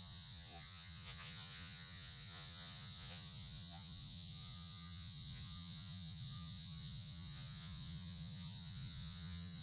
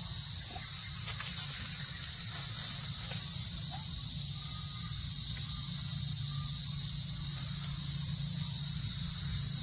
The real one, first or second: second